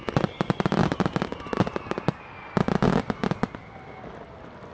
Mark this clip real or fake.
real